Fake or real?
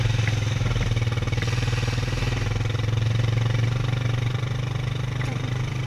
real